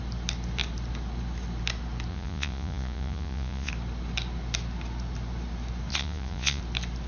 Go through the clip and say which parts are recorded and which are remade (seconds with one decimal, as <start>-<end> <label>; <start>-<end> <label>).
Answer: 0.0-2.1 recorded; 2.1-3.7 remade; 3.7-5.9 recorded; 5.9-6.6 remade; 6.6-7.1 recorded